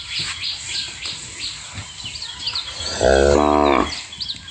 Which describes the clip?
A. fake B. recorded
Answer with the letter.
B